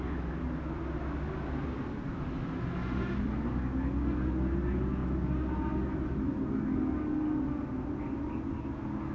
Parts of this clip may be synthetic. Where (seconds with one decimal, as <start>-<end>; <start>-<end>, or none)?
none